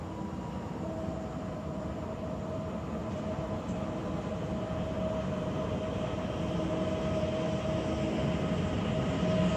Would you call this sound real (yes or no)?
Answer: yes